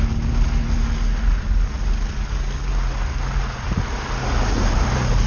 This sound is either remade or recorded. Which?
recorded